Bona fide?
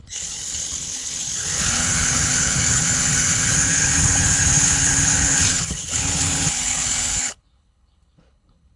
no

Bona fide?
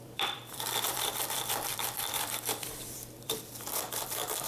no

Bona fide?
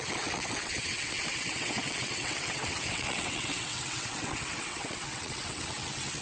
no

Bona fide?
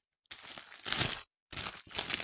yes